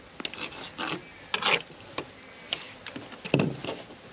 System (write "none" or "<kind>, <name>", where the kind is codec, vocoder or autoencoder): none